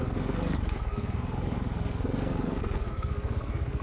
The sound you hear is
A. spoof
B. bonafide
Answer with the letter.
A